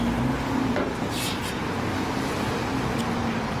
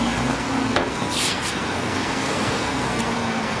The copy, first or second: second